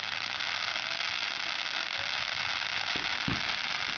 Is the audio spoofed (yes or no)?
no